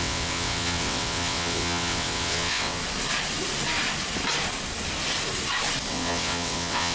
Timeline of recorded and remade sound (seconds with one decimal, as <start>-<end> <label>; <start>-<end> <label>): 0.0-2.8 remade; 2.8-5.9 recorded; 5.9-6.9 remade